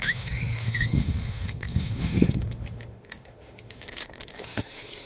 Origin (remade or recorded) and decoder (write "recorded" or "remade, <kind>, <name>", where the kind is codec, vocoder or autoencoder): remade, autoencoder, DAC-VAE